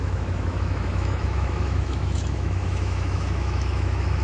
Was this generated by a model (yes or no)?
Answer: yes